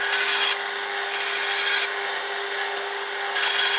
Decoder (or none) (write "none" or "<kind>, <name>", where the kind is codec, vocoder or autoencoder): none